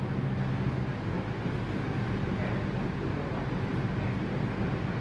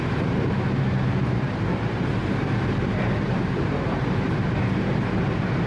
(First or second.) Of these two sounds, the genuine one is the first